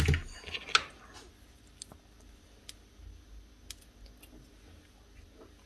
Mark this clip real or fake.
real